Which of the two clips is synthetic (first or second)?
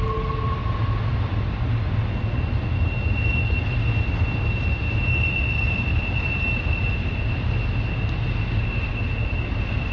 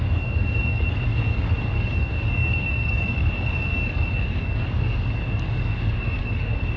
second